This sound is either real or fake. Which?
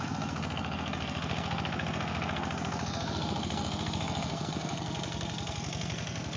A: fake